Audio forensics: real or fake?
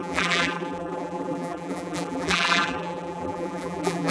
fake